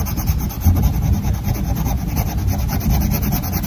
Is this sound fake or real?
real